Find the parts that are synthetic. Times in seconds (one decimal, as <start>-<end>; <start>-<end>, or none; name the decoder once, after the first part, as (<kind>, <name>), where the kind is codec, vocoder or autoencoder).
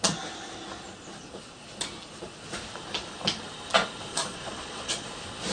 4.1-5.1 (vocoder, Vocos)